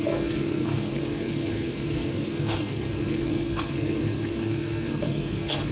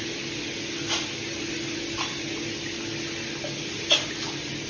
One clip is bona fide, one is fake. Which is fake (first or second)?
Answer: first